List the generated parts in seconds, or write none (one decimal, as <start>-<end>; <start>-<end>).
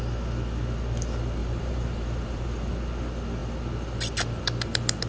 1.4-2.7